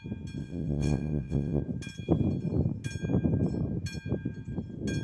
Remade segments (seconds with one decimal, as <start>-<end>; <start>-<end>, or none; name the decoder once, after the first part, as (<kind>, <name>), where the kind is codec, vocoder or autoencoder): 0.4-1.6 (vocoder, WaveNeXt)